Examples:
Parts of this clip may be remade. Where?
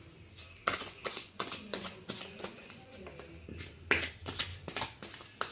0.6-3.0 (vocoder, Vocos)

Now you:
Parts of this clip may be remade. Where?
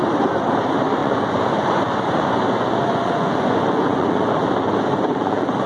1.0-4.3 (vocoder, Vocos); 4.9-5.7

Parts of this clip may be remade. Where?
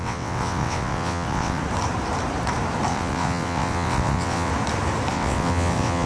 0.0-1.6 (vocoder, WaveNeXt); 2.9-4.5; 5.1-6.1